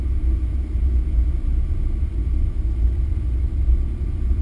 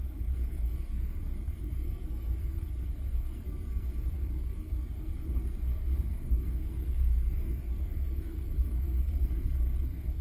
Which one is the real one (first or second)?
first